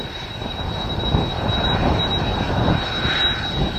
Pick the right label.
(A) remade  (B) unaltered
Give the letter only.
B